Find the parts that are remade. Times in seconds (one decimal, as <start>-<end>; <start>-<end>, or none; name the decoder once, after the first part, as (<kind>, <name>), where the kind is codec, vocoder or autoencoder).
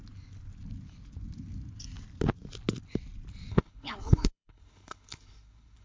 3.5-5.8 (codec, HILCodec)